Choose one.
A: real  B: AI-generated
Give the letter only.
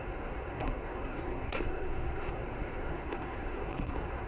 B